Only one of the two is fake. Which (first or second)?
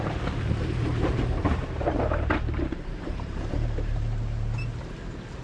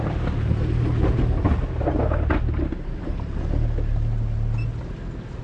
first